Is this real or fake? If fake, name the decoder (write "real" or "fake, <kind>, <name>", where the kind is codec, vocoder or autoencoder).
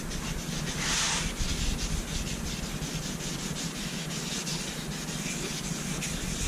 real